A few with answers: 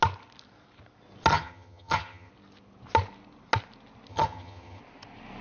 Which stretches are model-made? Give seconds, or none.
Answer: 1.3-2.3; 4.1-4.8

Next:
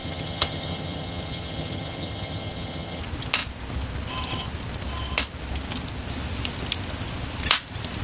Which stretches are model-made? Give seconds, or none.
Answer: 0.0-3.0

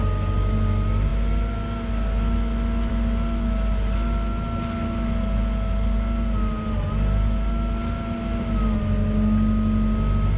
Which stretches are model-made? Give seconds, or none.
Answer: none

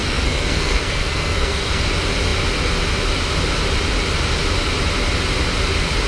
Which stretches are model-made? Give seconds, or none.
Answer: 0.0-1.8

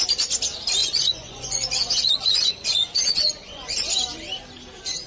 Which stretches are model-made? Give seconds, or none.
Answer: 0.8-3.9

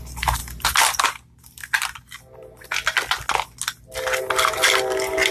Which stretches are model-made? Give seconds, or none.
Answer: none